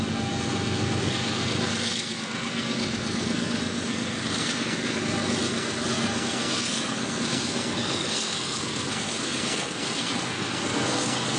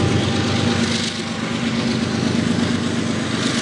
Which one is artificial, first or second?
first